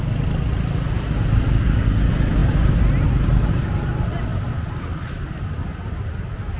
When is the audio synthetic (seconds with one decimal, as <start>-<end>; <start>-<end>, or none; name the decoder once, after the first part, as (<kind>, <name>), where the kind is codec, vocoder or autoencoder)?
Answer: none